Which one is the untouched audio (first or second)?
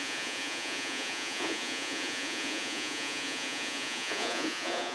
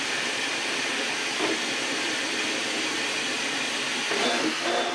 second